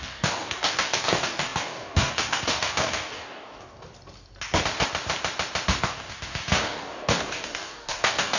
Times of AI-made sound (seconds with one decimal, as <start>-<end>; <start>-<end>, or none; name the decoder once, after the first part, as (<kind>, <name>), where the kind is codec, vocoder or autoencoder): 0.0-3.8 (codec, DAC); 5.8-8.4